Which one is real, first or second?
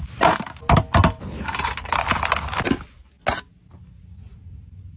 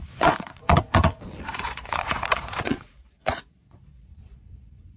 first